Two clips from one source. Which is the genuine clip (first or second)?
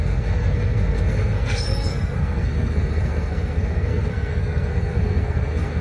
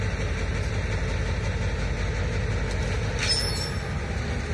second